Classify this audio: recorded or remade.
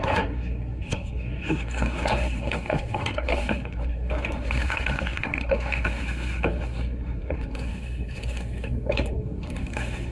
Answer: remade